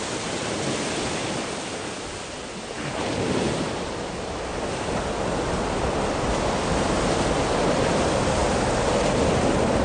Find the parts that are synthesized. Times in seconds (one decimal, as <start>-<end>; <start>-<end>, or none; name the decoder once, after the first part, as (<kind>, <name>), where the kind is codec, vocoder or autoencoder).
none